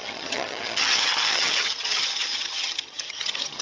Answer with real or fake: fake